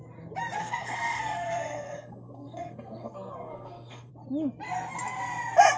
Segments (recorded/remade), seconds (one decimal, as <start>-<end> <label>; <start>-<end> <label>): 0.0-0.6 recorded; 0.6-4.1 remade; 4.1-5.8 recorded